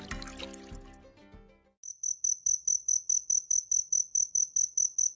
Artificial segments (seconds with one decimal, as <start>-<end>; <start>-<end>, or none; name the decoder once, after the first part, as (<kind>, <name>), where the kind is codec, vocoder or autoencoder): none